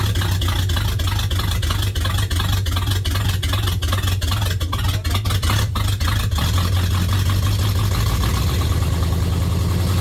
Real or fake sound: real